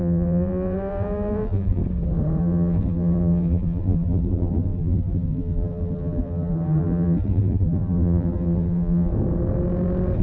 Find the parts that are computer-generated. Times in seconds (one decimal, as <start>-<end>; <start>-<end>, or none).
0.0-1.8; 2.4-9.1